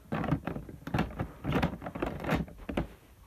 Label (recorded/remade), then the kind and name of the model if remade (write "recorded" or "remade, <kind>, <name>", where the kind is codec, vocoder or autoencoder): recorded